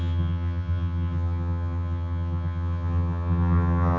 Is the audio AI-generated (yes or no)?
yes